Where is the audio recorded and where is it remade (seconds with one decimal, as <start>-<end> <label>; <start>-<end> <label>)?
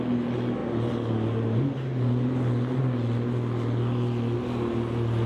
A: 0.0-5.3 recorded